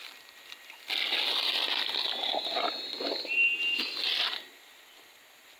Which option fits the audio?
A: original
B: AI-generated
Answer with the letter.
A